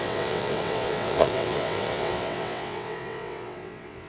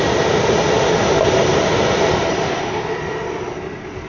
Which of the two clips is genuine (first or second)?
second